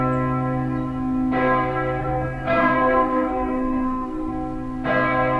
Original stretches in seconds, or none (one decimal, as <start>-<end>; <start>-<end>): 0.0-2.0; 4.3-5.4

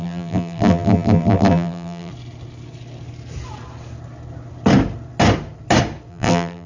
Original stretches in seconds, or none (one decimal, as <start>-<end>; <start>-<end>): 2.1-6.1

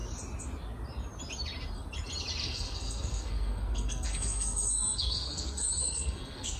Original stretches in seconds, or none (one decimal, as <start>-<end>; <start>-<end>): 0.0-2.4

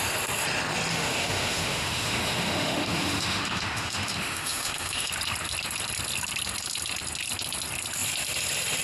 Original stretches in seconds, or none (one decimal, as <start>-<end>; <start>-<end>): 0.0-0.9; 5.1-8.8

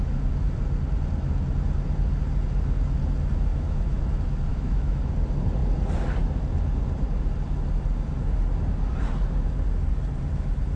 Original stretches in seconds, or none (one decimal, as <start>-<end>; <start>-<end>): 0.0-3.5; 4.0-4.5; 5.0-10.8

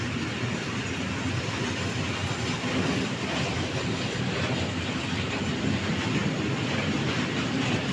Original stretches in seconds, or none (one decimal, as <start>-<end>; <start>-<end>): 0.0-7.9